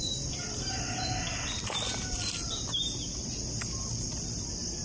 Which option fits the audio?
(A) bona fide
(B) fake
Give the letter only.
A